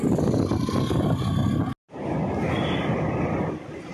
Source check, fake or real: real